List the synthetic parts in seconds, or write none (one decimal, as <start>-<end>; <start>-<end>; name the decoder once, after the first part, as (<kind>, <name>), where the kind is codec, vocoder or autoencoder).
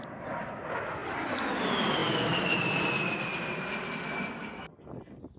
none